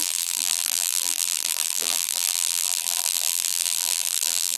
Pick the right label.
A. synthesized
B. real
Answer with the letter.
A